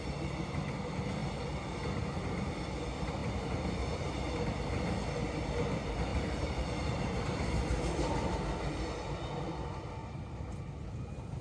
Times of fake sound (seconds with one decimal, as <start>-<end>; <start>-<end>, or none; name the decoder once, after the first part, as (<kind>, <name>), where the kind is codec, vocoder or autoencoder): 6.1-7.5 (vocoder, BigVGAN v2); 10.0-10.6